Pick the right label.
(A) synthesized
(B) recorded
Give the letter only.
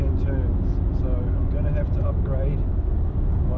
B